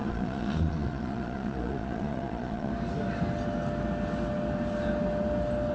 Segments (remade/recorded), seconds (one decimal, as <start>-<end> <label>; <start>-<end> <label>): 0.0-2.7 remade; 2.7-5.7 recorded